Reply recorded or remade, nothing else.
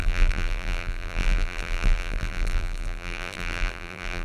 remade